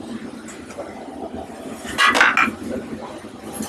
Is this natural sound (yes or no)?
yes